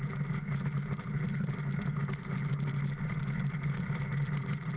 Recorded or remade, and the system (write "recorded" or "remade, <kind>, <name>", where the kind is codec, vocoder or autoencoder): recorded